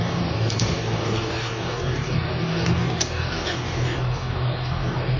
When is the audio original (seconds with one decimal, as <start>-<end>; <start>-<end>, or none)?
none